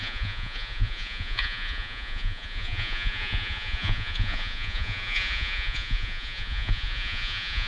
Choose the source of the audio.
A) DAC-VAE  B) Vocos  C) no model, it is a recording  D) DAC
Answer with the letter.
B